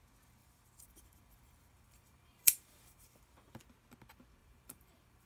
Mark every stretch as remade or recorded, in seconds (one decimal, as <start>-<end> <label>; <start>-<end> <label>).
0.0-0.4 recorded; 0.4-3.6 remade; 3.6-4.4 recorded; 4.4-5.3 remade